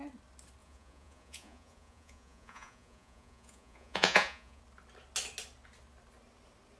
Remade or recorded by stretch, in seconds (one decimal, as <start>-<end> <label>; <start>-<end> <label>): 0.0-0.6 recorded; 0.6-4.6 remade; 4.6-6.8 recorded